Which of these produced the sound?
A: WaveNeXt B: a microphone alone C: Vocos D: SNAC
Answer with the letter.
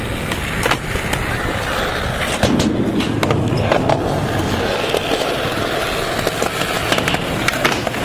B